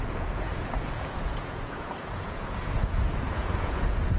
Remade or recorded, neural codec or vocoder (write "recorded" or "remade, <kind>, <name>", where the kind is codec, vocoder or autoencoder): remade, vocoder, Vocos